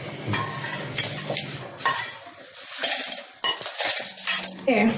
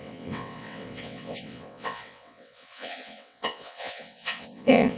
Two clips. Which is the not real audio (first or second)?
second